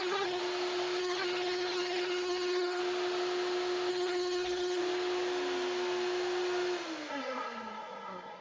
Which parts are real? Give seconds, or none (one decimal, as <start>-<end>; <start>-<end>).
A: 0.4-1.0; 2.8-3.9; 4.8-7.1